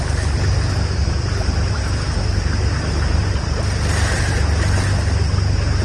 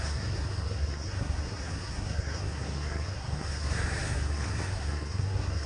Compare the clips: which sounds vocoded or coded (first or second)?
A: second